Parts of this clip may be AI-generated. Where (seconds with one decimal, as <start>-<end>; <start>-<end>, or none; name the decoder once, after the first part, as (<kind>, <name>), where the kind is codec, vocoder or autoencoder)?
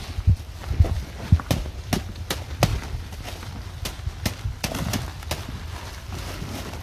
none